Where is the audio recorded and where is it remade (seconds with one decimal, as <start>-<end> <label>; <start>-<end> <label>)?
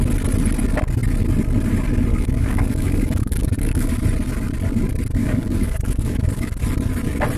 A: 0.0-2.1 recorded; 2.1-3.9 remade; 3.9-5.2 recorded; 5.2-6.6 remade; 6.6-7.4 recorded